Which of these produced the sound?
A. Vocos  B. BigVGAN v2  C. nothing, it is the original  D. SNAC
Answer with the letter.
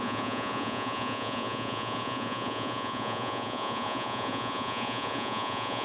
A